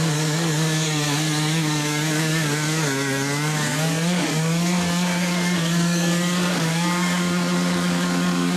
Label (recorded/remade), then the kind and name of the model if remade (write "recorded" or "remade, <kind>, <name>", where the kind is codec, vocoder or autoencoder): remade, codec, DAC